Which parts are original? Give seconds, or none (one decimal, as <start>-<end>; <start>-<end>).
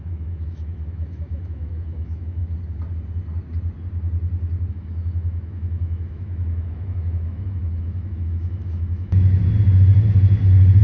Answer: 2.4-4.7; 9.4-10.8